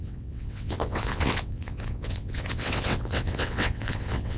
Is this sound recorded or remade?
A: remade